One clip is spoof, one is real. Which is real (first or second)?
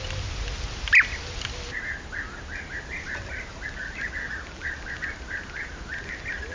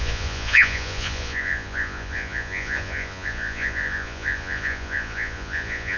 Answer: first